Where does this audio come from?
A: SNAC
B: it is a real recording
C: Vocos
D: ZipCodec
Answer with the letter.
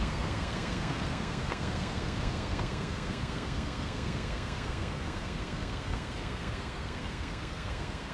A